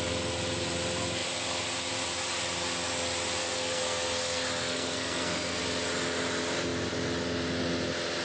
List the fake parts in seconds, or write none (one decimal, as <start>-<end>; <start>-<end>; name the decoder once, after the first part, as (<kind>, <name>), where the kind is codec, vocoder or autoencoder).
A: 3.4-5.6 (codec, SNAC)